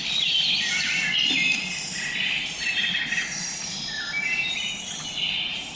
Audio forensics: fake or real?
real